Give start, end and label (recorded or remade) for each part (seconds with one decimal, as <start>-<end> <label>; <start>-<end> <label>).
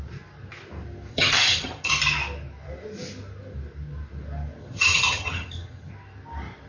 0.0-1.1 recorded; 1.1-1.9 remade; 1.9-4.6 recorded; 4.6-5.9 remade; 5.9-6.7 recorded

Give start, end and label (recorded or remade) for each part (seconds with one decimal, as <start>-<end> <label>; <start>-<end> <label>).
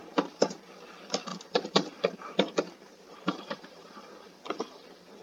0.0-0.6 remade; 0.6-1.3 recorded; 1.3-4.4 remade; 4.4-5.2 recorded